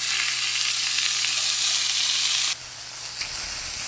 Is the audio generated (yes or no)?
no